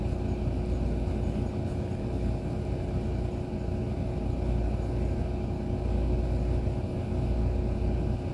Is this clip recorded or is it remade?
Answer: recorded